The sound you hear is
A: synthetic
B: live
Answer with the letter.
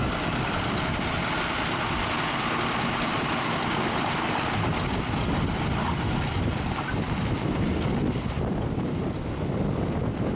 B